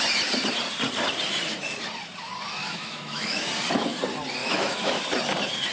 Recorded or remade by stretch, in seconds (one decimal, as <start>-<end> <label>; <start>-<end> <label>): 0.0-2.6 recorded; 2.6-3.5 remade; 3.5-4.4 recorded; 4.4-5.0 remade; 5.0-5.7 recorded